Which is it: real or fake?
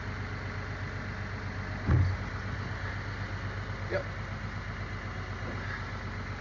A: real